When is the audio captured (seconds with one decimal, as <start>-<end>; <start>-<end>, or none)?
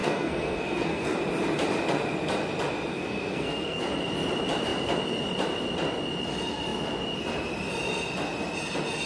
1.2-2.9; 3.8-9.1